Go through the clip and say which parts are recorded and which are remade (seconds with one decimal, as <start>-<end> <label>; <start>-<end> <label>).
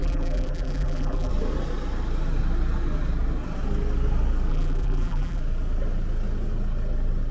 0.0-1.3 remade; 1.3-4.5 recorded; 4.5-5.4 remade; 5.4-7.3 recorded